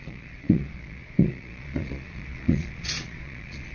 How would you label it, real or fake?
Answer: fake